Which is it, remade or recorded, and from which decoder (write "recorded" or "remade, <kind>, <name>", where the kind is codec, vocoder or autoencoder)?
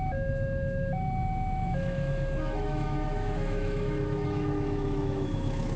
remade, autoencoder, DAC-VAE